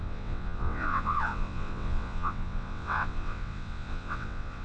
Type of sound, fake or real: fake